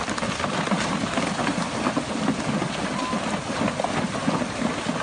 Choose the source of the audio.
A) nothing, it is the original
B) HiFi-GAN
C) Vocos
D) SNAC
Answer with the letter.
A